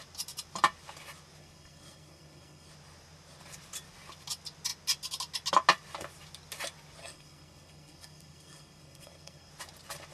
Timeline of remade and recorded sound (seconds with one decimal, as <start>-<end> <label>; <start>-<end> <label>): 0.0-1.4 recorded; 1.4-2.7 remade; 2.7-7.0 recorded; 7.0-9.5 remade; 9.5-10.1 recorded